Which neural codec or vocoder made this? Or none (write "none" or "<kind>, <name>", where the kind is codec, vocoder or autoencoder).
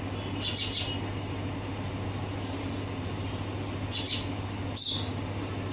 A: none